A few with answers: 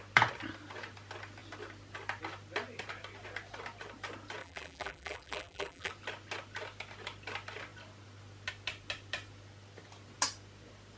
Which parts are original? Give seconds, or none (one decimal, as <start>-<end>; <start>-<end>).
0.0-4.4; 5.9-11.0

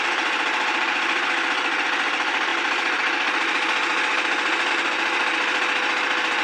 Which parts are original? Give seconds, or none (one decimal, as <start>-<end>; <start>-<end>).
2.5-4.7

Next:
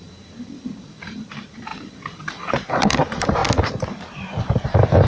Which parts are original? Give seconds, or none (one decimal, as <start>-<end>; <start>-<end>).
3.4-4.4

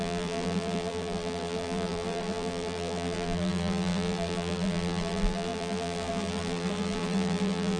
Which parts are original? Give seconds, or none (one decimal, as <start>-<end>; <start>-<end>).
none